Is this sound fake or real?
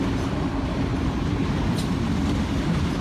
real